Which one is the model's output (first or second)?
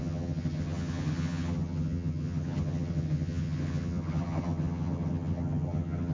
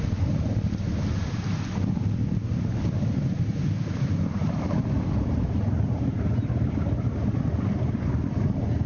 first